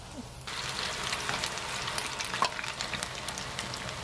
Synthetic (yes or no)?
no